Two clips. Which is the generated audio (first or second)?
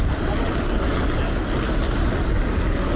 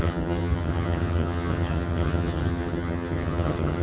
second